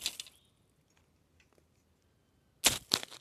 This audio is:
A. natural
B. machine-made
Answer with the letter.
A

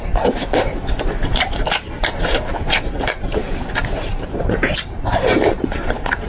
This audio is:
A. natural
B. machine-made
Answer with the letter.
B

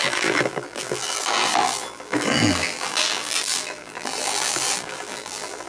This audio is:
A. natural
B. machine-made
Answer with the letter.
B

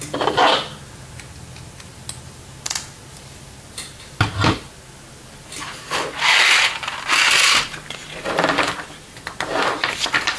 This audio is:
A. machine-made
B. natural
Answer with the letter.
B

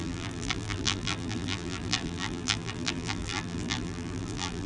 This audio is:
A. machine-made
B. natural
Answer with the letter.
A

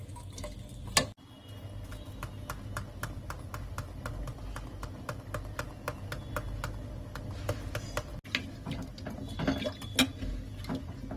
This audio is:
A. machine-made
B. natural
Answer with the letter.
B